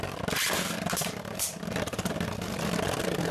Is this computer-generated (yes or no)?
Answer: yes